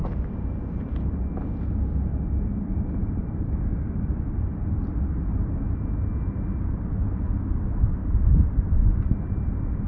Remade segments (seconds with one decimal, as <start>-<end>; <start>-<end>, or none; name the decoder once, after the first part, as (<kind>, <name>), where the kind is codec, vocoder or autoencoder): 0.0-1.2 (vocoder, BigVGAN v2); 3.0-4.2; 8.0-8.5